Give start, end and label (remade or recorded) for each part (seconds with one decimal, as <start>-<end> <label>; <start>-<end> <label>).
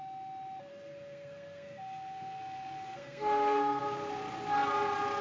0.0-0.7 recorded; 0.7-3.8 remade; 3.8-5.2 recorded